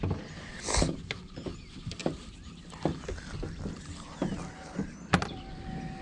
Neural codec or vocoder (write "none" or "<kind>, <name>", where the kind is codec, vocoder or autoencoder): none